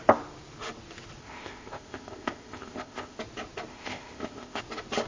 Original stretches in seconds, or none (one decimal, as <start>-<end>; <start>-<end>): 0.0-1.2; 3.2-3.7; 4.6-5.1